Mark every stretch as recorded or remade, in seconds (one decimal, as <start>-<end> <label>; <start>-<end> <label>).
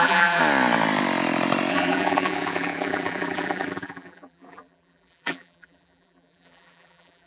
0.0-0.4 remade; 0.4-1.7 recorded; 1.7-7.3 remade